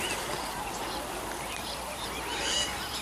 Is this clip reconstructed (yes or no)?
yes